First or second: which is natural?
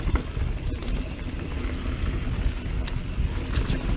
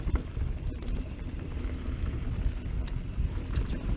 first